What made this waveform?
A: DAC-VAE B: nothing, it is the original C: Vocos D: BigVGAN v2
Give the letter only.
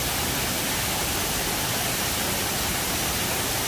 B